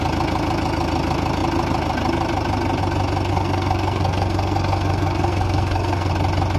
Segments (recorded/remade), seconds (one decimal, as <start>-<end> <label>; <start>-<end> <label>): 0.0-3.3 recorded; 3.3-6.1 remade; 6.1-6.6 recorded